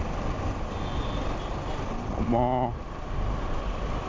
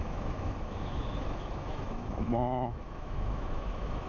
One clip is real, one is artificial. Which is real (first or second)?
first